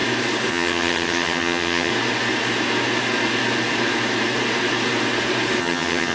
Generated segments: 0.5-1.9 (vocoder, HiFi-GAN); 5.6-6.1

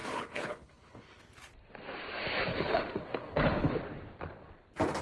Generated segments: 0.0-1.2 (codec, HILCodec); 2.5-3.7